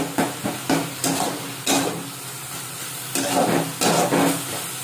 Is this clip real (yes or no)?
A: yes